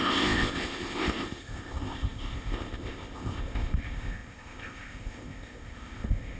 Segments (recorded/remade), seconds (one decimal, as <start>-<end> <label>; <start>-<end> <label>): 0.0-6.4 remade